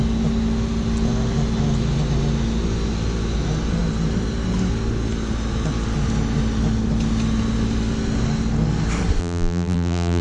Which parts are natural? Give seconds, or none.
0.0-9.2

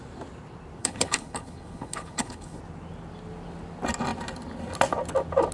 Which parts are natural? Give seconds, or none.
0.0-0.8; 2.6-5.5